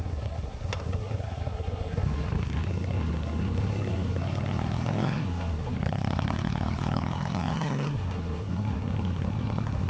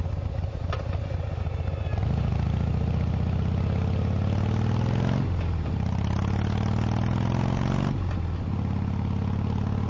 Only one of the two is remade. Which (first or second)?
first